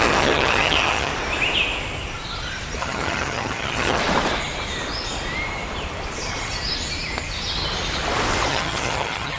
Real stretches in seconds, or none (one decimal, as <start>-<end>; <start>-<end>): 1.1-2.8; 4.0-8.5